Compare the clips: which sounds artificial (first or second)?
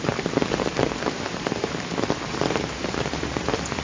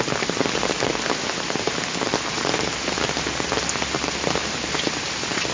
first